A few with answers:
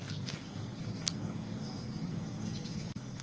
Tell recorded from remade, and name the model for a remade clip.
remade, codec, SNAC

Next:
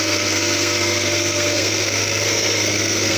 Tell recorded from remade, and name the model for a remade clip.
remade, codec, SNAC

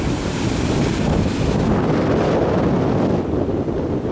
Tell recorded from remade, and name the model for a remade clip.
recorded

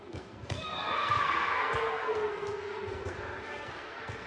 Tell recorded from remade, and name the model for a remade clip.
remade, codec, SNAC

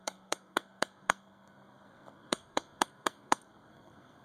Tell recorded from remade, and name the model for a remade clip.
remade, codec, SNAC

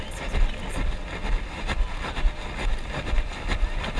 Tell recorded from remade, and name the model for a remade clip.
recorded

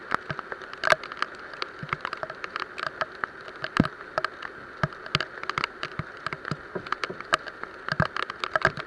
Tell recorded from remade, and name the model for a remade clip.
recorded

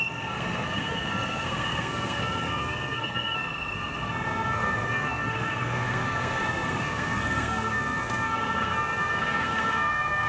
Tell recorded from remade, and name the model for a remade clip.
remade, codec, SNAC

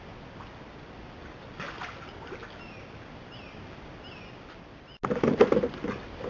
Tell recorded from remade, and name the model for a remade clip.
recorded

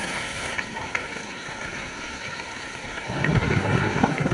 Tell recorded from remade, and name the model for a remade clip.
remade, codec, SNAC